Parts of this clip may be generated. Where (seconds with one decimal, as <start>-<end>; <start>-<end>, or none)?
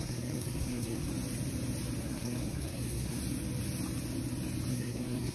0.0-1.1; 2.0-3.2; 4.7-5.3